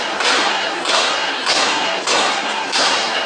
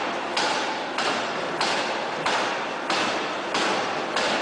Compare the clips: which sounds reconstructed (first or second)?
first